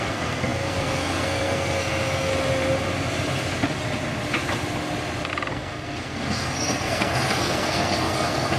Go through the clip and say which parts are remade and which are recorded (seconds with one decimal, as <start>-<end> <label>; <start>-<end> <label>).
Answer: 0.0-2.3 remade; 2.3-5.5 recorded; 5.5-8.6 remade